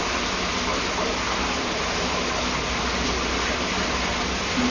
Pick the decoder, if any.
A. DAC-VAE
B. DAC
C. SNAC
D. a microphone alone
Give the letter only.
D